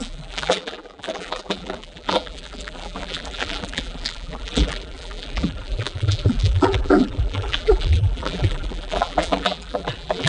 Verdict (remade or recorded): remade